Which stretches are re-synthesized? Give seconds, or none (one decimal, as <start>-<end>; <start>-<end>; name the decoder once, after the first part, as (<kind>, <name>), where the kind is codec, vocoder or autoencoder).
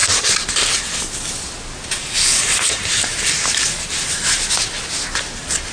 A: 0.0-0.9 (vocoder, BigVGAN v2); 2.3-3.7